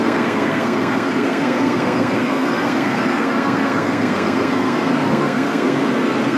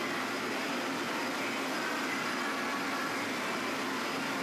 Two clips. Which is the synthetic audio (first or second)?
first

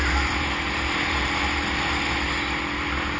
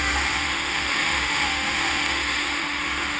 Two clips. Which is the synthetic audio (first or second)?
second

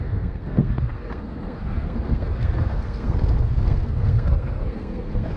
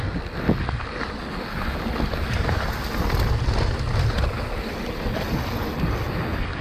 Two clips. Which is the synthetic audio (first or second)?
first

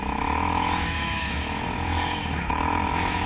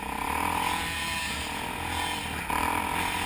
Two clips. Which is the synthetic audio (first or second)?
first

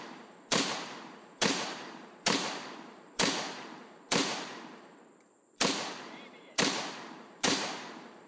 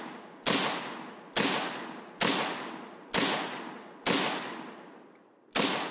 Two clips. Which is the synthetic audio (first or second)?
first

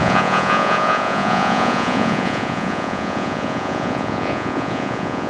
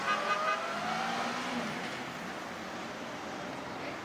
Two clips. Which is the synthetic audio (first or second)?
first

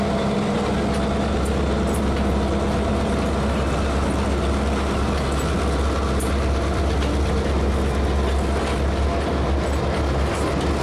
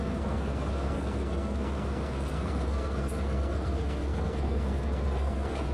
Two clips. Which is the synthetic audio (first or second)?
second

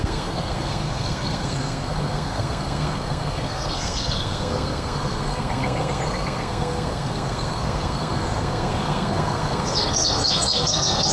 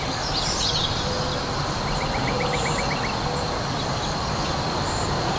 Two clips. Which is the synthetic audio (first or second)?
first